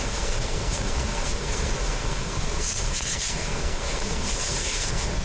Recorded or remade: remade